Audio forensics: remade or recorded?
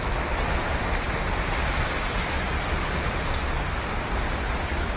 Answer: recorded